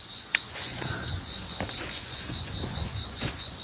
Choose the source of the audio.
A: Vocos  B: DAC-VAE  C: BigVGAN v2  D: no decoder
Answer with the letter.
A